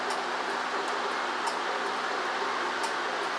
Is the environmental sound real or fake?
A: real